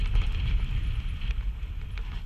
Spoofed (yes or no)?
no